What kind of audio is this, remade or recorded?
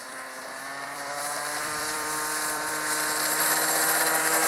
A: remade